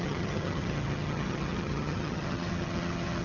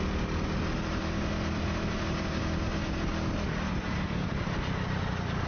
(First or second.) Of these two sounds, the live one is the second